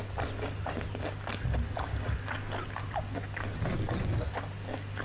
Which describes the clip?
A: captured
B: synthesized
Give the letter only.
A